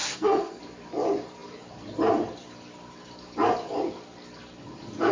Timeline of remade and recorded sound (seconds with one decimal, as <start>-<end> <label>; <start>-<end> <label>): 0.0-0.6 remade; 0.6-5.1 recorded

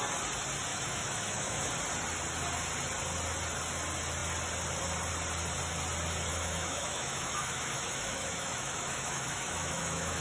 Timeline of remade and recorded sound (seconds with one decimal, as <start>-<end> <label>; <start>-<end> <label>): 0.0-0.7 recorded; 0.7-1.7 remade; 1.7-6.3 recorded; 6.3-10.2 remade